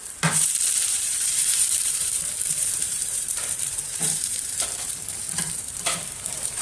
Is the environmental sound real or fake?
fake